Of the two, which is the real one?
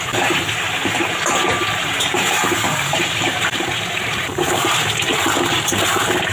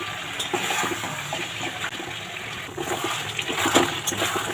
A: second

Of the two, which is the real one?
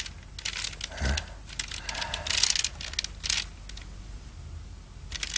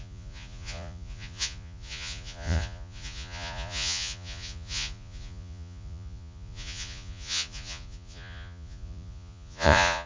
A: first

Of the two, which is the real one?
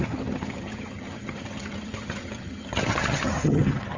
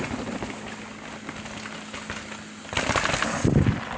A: second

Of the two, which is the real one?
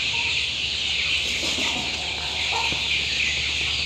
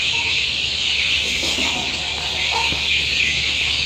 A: first